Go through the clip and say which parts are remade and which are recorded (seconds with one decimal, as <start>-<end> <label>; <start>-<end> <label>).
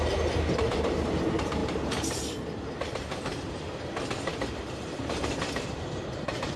0.0-6.6 remade